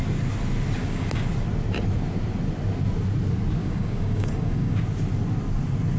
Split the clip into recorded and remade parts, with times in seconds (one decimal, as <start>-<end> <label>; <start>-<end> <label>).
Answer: 0.0-0.8 recorded; 0.8-1.3 remade; 1.3-3.6 recorded; 3.6-4.8 remade; 4.8-6.0 recorded